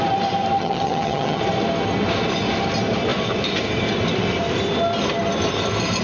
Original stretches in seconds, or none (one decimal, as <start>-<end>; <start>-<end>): 0.0-0.6; 1.4-6.0